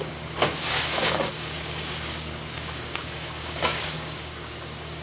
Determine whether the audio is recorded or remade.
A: remade